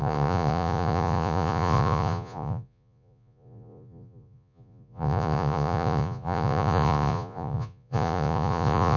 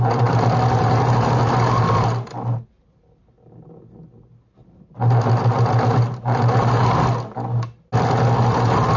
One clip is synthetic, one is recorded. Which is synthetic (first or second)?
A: first